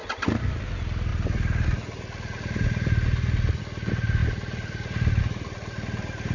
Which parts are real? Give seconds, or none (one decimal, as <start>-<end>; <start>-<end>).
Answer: 0.0-4.2; 5.2-6.3